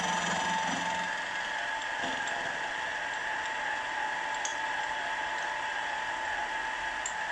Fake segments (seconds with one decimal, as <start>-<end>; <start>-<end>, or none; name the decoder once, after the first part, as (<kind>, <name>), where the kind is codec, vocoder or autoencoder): none

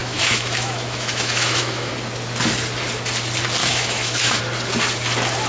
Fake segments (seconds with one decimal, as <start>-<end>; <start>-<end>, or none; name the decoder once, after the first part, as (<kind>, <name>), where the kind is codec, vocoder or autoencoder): 0.0-1.9 (autoencoder, DAC-VAE); 3.6-4.4

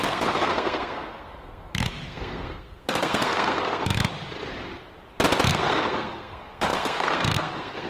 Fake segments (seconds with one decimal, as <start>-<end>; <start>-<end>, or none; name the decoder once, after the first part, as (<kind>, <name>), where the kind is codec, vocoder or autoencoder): 0.0-4.0 (codec, SNAC); 5.5-7.9

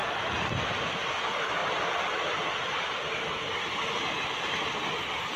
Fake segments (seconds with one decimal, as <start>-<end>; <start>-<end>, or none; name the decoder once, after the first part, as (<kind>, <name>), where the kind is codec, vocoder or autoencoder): none

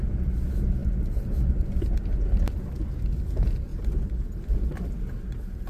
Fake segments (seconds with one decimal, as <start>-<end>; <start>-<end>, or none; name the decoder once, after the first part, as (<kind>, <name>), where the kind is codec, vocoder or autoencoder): none

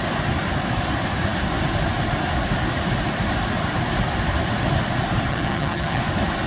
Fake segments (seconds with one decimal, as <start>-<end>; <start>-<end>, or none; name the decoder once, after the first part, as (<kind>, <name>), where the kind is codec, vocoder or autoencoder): 5.3-6.0 (vocoder, HiFi-GAN)

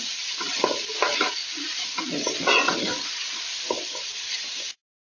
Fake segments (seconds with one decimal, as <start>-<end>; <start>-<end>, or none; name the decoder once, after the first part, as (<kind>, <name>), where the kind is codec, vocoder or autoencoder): none